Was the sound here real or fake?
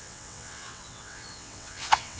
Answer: fake